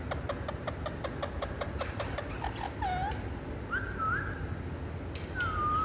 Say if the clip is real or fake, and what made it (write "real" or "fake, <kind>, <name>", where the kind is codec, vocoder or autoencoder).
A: real